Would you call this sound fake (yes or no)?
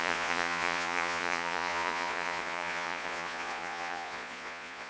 yes